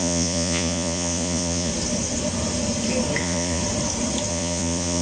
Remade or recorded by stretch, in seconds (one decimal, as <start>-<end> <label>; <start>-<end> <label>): 0.0-1.7 remade; 1.7-3.2 recorded; 3.2-3.6 remade; 3.6-4.3 recorded; 4.3-5.0 remade